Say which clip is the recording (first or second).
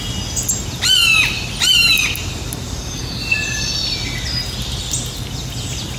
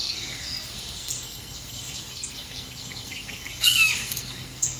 first